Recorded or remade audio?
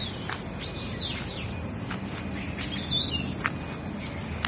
recorded